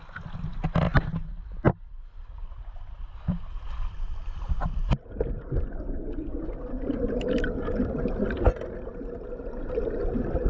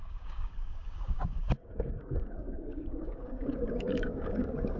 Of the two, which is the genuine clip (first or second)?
first